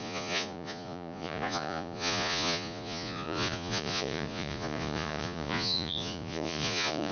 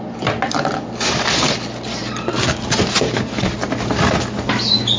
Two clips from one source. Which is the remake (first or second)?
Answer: first